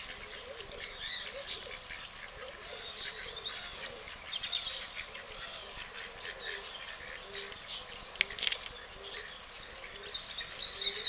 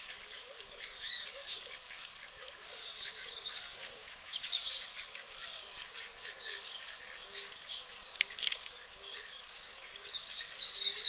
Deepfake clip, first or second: second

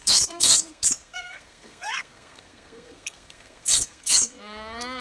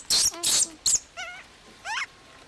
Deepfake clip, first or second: first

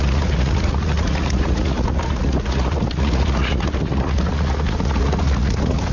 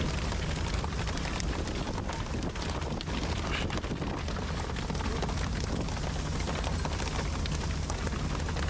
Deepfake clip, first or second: first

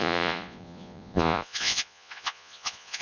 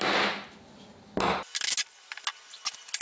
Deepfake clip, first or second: first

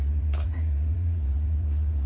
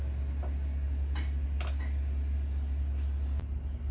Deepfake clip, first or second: first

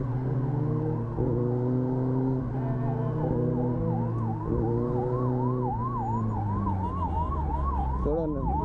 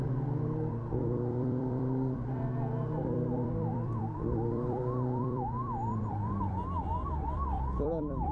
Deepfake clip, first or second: second